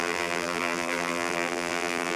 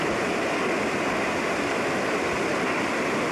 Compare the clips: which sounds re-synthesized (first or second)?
first